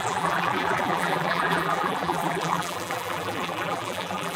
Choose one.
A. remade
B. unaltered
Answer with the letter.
A